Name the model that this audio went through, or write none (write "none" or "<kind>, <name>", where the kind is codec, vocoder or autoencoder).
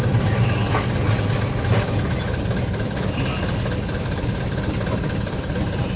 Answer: vocoder, BigVGAN v2